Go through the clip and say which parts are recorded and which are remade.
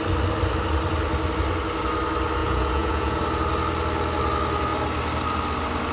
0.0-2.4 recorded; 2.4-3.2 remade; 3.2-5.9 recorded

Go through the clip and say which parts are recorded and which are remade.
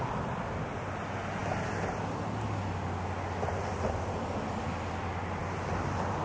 0.0-6.2 recorded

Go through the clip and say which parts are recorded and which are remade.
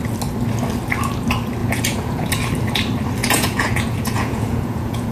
0.0-1.6 recorded; 1.6-2.3 remade; 2.3-3.2 recorded; 3.2-5.1 remade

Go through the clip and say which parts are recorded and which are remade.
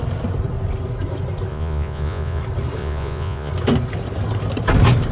0.0-1.5 recorded; 1.5-2.4 remade; 2.4-2.8 recorded; 2.8-3.5 remade; 3.5-5.1 recorded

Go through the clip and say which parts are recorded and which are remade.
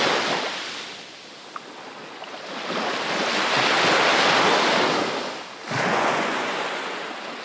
0.0-5.9 recorded; 5.9-7.0 remade; 7.0-7.4 recorded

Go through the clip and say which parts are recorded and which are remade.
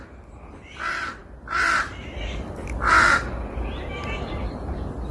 0.0-5.1 recorded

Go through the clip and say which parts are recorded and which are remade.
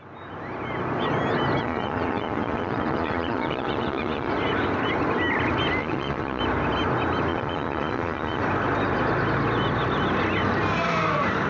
0.0-1.6 recorded; 1.6-4.3 remade; 4.3-5.8 recorded; 5.8-6.4 remade; 6.4-7.3 recorded; 7.3-8.4 remade; 8.4-11.5 recorded